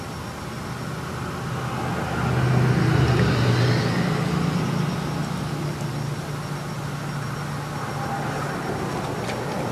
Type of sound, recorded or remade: recorded